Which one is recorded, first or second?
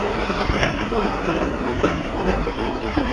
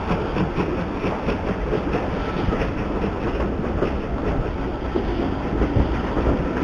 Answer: second